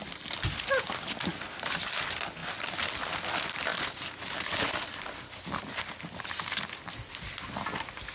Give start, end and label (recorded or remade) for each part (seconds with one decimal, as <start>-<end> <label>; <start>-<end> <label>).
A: 0.0-8.1 recorded